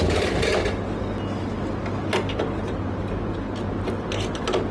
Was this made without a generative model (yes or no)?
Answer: yes